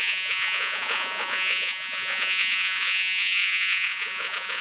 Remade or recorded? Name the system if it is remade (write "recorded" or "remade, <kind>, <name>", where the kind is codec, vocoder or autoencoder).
remade, vocoder, Vocos